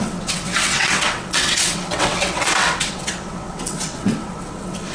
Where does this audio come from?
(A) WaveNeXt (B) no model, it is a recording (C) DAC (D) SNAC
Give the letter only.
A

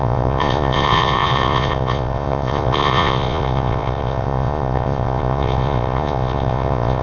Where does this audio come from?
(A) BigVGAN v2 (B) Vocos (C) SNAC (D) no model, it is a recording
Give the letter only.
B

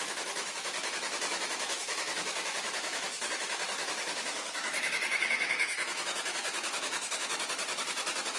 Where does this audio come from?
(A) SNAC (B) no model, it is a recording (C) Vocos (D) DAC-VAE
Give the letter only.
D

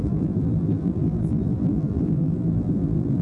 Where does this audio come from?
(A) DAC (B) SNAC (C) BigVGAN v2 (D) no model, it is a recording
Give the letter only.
C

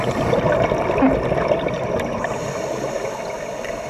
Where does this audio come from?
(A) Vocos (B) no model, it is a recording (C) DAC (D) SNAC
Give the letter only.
B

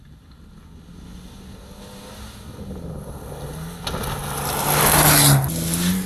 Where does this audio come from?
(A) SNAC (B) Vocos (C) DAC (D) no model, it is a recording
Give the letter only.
D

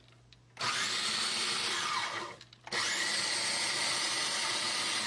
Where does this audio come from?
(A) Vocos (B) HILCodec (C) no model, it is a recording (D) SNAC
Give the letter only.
C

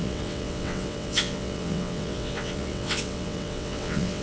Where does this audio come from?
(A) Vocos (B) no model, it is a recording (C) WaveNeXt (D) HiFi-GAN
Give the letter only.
C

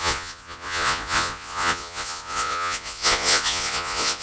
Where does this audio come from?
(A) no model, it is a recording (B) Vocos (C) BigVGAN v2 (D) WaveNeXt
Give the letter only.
B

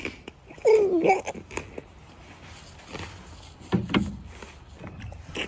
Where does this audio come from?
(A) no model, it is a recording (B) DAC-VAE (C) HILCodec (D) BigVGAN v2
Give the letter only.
A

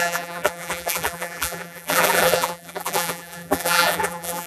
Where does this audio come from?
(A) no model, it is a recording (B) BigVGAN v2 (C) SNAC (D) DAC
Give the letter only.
B